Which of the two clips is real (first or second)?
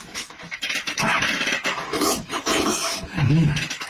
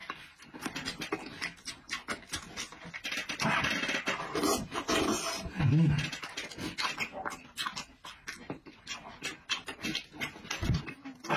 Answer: second